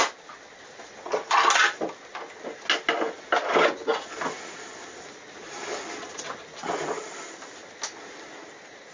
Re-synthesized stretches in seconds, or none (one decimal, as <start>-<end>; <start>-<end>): none